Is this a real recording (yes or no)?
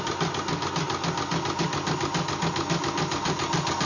yes